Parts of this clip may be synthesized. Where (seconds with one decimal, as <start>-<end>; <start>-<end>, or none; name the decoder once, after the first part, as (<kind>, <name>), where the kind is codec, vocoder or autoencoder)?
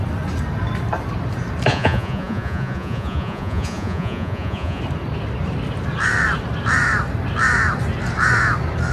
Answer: 1.7-4.8 (vocoder, Vocos)